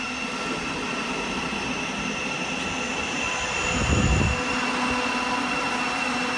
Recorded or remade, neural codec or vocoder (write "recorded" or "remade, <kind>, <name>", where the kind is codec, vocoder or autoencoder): recorded